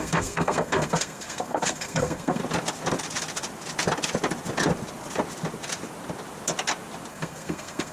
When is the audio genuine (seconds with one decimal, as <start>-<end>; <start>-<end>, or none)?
2.4-7.1